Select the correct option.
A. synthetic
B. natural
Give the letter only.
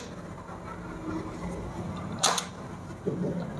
B